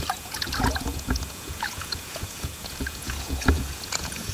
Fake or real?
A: fake